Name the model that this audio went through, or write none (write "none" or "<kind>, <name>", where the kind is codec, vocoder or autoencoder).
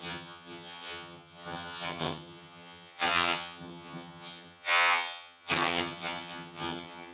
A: vocoder, HiFi-GAN